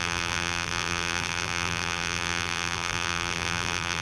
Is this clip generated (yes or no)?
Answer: yes